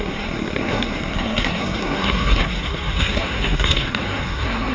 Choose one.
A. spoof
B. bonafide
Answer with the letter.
A